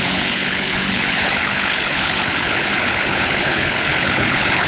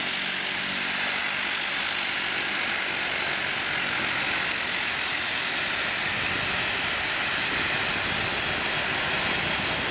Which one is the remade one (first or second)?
first